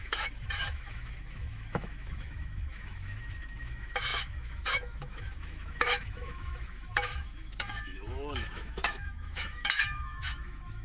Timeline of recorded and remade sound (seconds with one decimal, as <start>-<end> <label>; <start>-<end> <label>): 0.0-10.8 remade